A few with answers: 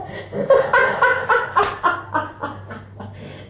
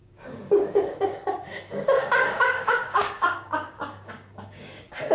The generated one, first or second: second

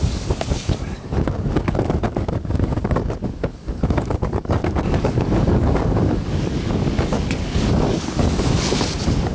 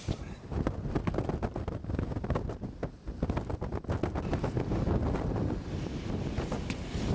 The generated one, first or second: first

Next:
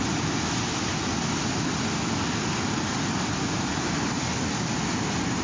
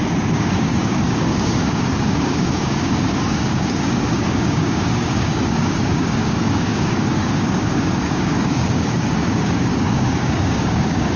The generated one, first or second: second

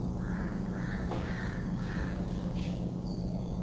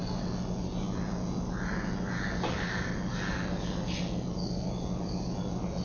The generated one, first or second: first